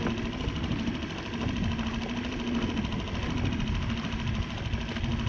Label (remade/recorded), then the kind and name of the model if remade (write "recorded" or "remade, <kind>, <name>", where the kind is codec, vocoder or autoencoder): recorded